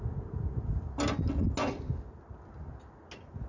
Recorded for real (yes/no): yes